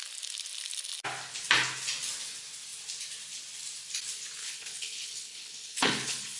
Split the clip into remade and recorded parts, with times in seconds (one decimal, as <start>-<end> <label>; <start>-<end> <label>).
0.0-4.4 recorded; 4.4-6.4 remade

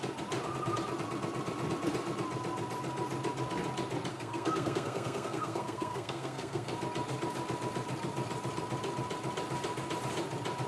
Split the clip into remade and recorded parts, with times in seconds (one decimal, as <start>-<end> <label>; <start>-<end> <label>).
0.0-4.1 recorded; 4.1-6.7 remade; 6.7-10.7 recorded